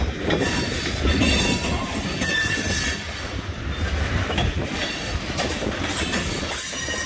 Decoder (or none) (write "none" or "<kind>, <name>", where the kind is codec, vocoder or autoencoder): none